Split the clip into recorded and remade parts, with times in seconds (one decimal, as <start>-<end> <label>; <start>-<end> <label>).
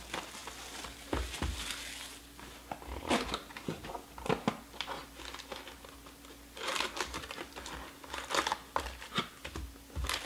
0.0-10.3 recorded